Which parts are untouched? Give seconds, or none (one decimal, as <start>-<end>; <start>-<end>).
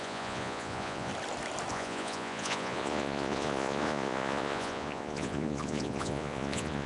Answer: 1.1-1.7